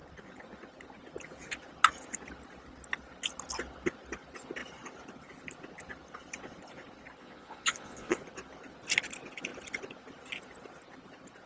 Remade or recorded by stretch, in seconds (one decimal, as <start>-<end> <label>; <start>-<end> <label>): 0.0-7.2 recorded; 7.2-8.2 remade; 8.2-11.5 recorded